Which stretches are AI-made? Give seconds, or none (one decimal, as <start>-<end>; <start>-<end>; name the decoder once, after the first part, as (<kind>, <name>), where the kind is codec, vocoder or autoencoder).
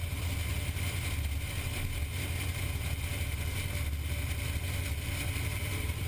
0.0-2.1 (vocoder, BigVGAN v2); 5.0-6.1